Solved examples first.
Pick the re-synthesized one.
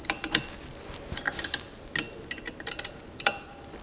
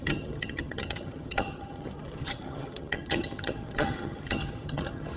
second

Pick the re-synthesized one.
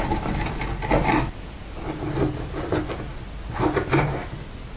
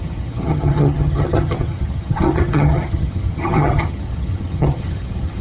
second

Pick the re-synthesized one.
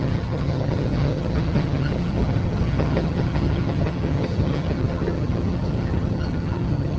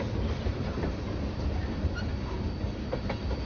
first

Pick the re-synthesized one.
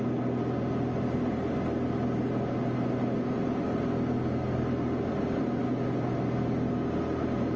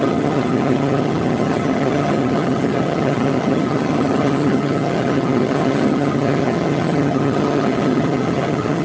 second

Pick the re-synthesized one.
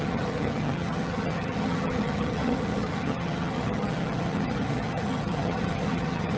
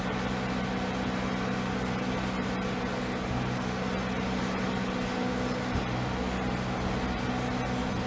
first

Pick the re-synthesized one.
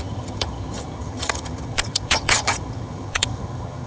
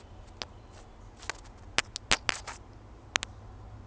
first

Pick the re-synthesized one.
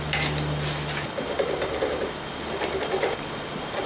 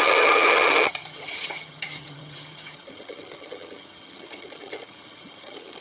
second